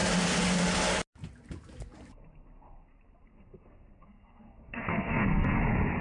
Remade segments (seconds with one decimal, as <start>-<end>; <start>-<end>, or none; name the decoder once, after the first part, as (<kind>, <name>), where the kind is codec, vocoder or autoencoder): 3.3-5.6 (codec, SNAC)